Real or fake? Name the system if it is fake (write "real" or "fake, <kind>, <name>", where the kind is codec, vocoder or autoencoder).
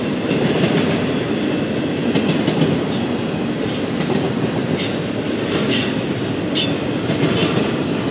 real